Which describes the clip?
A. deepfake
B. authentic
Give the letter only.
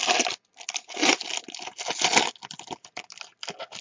B